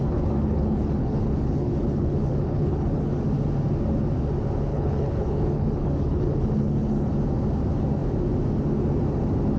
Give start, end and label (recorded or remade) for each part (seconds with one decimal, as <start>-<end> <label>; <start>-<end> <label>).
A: 0.0-3.2 remade; 3.2-4.7 recorded; 4.7-7.1 remade; 7.1-9.6 recorded